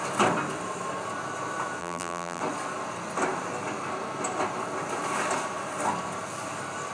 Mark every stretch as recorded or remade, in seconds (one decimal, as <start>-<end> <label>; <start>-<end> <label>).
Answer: 0.0-1.8 recorded; 1.8-2.4 remade; 2.4-6.9 recorded